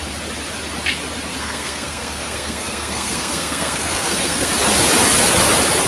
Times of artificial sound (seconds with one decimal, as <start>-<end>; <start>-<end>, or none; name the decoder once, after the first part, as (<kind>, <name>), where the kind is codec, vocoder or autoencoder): 1.3-4.5 (codec, SNAC)